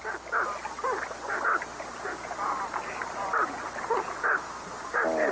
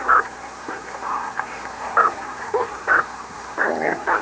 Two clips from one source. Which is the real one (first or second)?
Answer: first